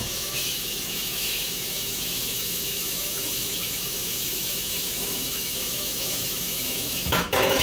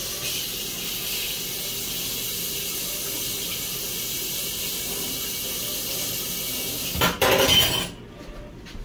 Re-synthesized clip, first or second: first